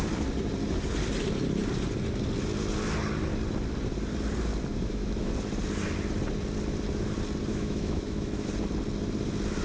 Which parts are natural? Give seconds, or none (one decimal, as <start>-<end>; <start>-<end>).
0.0-4.7; 5.3-7.5; 8.5-9.6